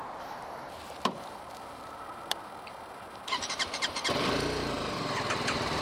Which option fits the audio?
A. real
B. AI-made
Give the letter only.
B